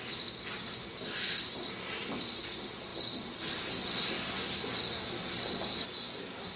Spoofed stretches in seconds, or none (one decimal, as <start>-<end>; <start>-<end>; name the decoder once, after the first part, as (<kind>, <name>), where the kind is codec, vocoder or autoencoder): none